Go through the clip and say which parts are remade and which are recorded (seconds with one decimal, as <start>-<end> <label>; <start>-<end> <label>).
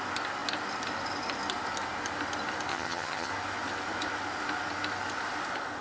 0.0-2.7 recorded; 2.7-3.3 remade; 3.3-5.8 recorded